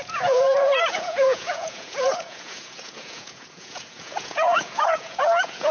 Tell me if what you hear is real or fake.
fake